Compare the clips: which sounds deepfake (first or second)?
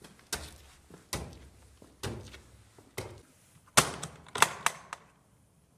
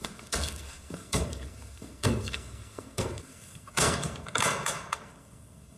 second